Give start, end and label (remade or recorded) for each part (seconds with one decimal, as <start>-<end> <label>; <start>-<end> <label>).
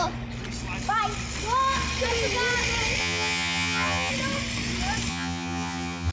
0.0-3.0 recorded; 3.0-4.1 remade; 4.1-5.1 recorded; 5.1-6.1 remade